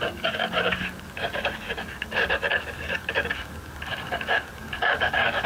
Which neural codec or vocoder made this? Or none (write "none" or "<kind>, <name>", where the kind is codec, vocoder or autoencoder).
codec, DAC